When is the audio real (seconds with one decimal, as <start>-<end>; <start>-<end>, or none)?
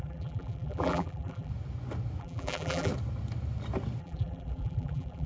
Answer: 1.5-2.2; 2.9-4.0